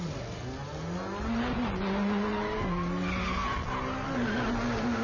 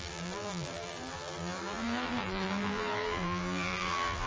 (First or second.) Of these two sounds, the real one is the first